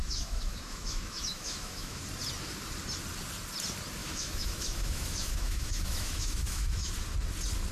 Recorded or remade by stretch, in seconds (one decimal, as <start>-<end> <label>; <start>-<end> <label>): 0.0-2.0 remade; 2.0-4.0 recorded; 4.0-6.9 remade; 6.9-7.7 recorded

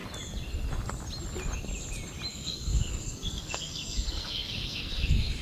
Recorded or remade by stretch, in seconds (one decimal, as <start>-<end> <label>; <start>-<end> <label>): 0.0-2.3 recorded; 2.3-5.4 remade